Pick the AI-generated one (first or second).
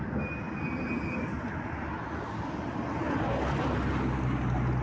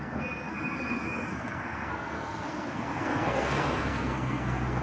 second